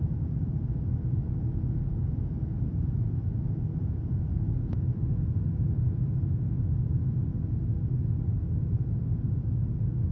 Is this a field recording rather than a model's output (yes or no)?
no